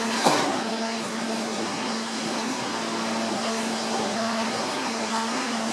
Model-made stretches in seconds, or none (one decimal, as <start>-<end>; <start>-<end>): 0.0-2.7; 3.3-5.7